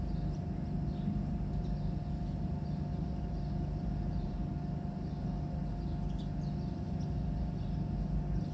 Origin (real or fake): real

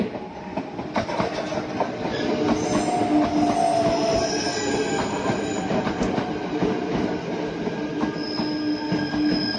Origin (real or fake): real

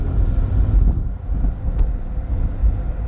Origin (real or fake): real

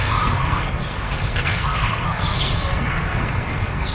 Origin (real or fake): fake